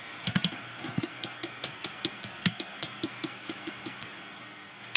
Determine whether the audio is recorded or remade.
remade